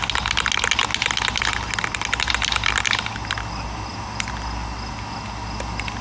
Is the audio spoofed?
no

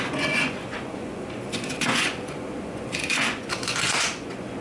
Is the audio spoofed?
yes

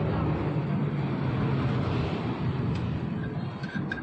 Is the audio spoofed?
no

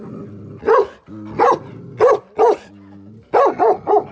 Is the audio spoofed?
no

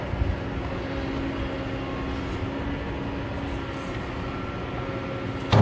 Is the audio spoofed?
no